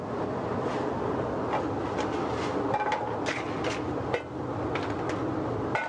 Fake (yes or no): no